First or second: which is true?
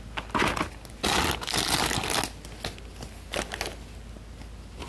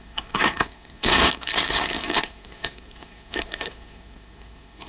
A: first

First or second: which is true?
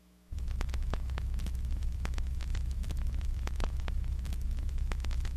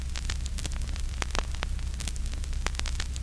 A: second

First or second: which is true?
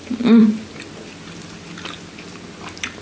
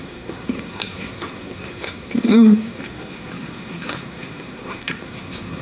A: first